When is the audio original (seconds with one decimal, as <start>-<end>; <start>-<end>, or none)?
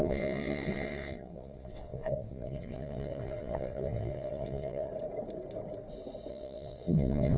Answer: 4.9-6.3